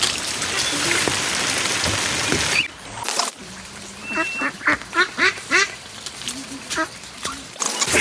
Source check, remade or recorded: recorded